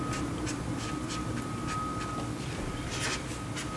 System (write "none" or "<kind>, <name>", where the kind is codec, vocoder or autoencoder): none